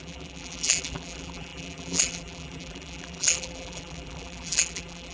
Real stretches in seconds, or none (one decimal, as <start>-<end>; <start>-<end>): none